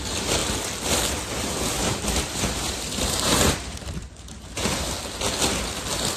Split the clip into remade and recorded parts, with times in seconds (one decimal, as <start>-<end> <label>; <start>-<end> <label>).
0.0-1.8 recorded; 1.8-4.8 remade; 4.8-6.2 recorded